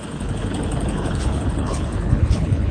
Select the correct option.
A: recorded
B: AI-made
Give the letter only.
B